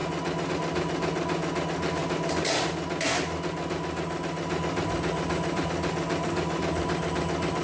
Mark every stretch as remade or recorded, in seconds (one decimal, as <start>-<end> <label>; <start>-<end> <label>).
0.0-7.6 recorded